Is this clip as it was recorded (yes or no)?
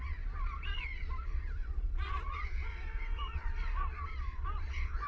no